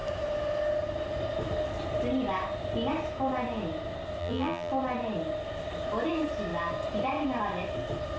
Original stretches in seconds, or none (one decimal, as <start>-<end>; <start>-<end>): 0.0-4.2; 4.7-8.2